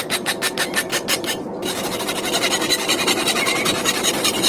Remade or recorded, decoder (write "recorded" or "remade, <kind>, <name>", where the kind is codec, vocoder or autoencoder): recorded